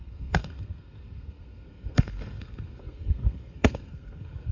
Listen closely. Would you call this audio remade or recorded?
remade